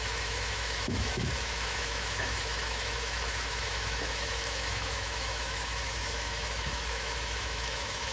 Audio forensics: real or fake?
fake